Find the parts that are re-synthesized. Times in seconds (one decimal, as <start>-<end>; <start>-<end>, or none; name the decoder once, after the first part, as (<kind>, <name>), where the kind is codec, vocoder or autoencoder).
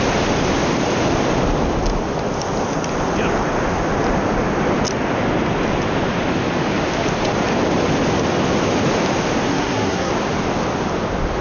9.5-10.1 (codec, SNAC)